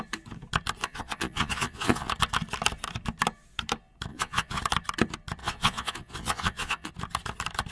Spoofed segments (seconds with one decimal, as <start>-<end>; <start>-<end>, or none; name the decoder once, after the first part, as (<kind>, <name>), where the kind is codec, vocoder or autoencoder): 0.8-2.1 (vocoder, Vocos); 4.1-4.6; 5.4-6.9